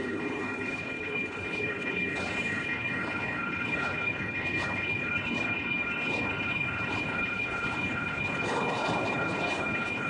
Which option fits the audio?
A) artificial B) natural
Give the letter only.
A